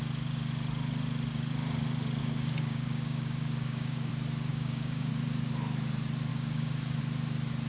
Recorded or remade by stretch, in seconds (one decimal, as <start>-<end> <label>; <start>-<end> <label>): 0.0-2.2 recorded; 2.2-4.1 remade; 4.1-4.5 recorded; 4.5-5.1 remade; 5.1-6.3 recorded; 6.3-7.0 remade; 7.0-7.7 recorded